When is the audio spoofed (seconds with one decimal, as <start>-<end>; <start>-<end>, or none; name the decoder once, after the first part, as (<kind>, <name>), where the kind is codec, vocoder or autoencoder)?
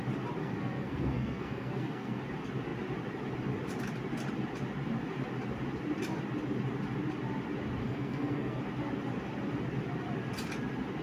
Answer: 0.4-2.2 (codec, SNAC); 7.8-8.6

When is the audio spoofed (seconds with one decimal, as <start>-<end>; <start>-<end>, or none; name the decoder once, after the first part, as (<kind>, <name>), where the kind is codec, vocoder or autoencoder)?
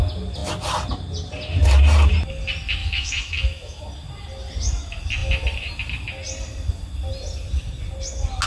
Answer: 2.8-3.8 (autoencoder, DAC-VAE)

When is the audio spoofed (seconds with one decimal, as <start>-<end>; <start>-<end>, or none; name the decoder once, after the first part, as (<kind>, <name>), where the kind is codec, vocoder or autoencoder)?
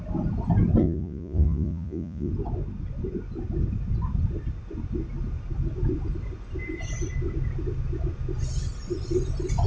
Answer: 0.8-2.3 (vocoder, Vocos)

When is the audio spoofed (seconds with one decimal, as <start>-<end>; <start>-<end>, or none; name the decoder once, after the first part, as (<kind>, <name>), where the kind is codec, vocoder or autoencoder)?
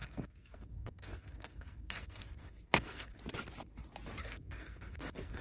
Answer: 0.0-3.2 (codec, SNAC); 4.2-5.4